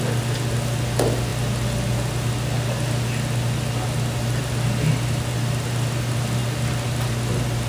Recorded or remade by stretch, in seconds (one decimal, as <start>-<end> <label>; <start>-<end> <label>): 0.0-7.7 recorded